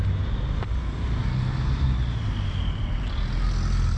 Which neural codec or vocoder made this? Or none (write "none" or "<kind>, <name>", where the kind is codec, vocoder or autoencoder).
none